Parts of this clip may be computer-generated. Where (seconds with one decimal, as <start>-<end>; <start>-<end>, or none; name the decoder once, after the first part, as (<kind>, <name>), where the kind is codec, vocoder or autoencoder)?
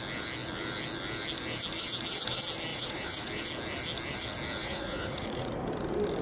2.7-3.3 (vocoder, Vocos); 4.6-5.5